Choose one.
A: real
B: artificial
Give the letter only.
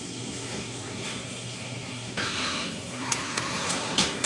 B